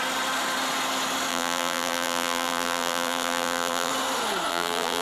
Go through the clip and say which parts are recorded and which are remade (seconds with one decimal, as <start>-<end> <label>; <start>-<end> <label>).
0.0-1.3 recorded; 1.3-3.9 remade; 3.9-4.5 recorded; 4.5-5.0 remade